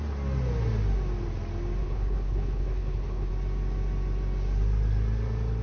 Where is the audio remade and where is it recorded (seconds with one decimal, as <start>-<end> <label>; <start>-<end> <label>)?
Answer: 0.0-1.8 recorded; 1.8-3.3 remade; 3.3-5.6 recorded